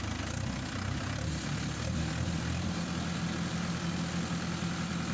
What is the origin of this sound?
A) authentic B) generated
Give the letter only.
A